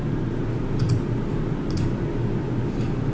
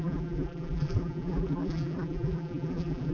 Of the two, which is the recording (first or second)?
first